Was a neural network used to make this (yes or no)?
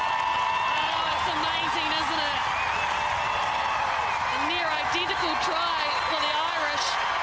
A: no